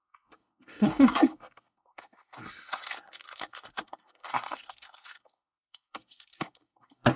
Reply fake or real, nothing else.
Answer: fake